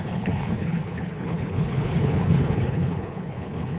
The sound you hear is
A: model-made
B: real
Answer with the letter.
A